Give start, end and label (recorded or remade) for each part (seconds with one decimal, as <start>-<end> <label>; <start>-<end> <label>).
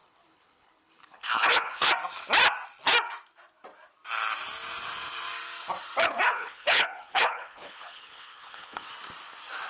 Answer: 0.0-1.9 remade; 1.9-6.0 recorded; 6.0-8.9 remade; 8.9-9.7 recorded